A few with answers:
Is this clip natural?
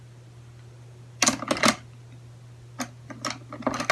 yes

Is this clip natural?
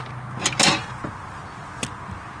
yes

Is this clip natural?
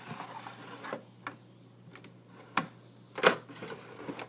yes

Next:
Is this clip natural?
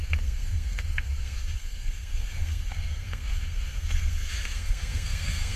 no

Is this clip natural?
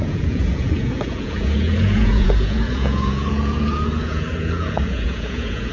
no